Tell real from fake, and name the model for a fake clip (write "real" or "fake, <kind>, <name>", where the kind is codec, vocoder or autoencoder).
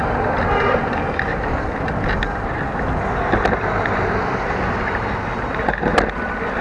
real